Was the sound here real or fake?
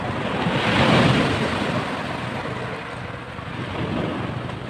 real